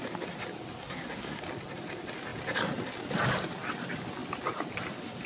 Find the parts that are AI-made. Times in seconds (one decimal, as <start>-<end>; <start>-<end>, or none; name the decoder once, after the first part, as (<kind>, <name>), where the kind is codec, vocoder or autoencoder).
0.8-1.4 (codec, SNAC)